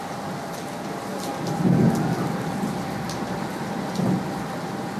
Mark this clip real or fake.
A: real